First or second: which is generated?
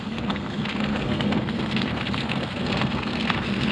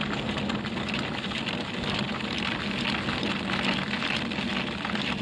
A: first